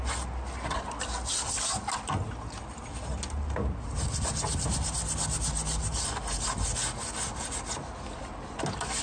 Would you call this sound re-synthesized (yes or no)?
no